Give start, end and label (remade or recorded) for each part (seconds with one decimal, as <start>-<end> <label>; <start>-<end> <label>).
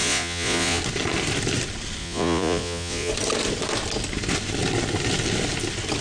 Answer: 0.0-0.8 remade; 0.8-2.0 recorded; 2.0-3.1 remade; 3.1-6.0 recorded